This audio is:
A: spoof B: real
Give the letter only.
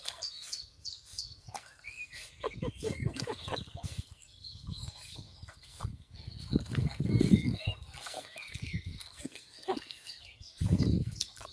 A